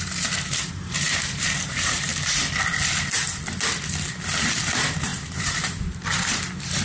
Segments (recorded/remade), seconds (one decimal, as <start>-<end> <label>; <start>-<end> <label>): 0.0-2.1 remade; 2.1-4.3 recorded; 4.3-6.8 remade